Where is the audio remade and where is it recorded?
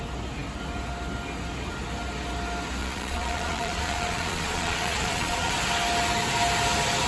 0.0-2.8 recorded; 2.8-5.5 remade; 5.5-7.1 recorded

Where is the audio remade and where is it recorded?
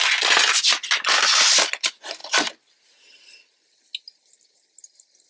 0.0-5.3 recorded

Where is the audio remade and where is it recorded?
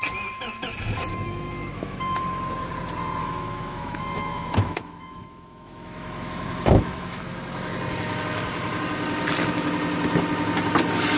0.0-1.1 recorded; 1.1-2.2 remade; 2.2-3.2 recorded; 3.2-7.2 remade; 7.2-11.2 recorded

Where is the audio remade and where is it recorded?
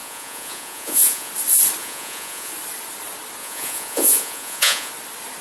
0.0-1.3 remade; 1.3-1.8 recorded; 1.8-2.5 remade; 2.5-3.4 recorded; 3.4-4.9 remade; 4.9-5.4 recorded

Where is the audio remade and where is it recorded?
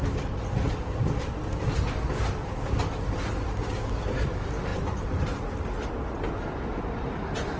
0.0-7.6 recorded